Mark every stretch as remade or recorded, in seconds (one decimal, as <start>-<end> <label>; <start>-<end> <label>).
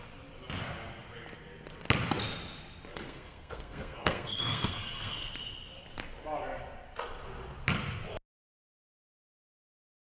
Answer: 0.0-2.9 recorded; 2.9-5.3 remade; 5.3-10.1 recorded